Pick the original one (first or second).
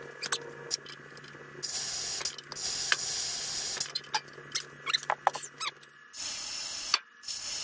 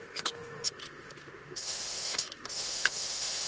first